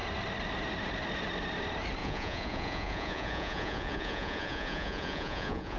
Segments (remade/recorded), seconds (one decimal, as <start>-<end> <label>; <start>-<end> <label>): 0.0-2.0 recorded; 2.0-5.8 remade